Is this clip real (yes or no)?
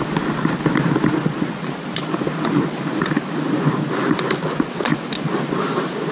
yes